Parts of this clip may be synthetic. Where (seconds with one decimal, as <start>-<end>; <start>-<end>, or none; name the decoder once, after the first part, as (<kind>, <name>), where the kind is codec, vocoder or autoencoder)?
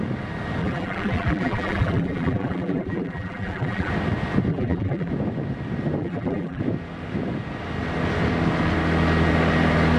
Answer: 0.6-3.9 (vocoder, BigVGAN v2); 4.5-5.1; 6.0-6.6